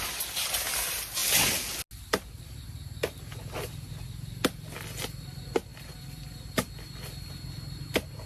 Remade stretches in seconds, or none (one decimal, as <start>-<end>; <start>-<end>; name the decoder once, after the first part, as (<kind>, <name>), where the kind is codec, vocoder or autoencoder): none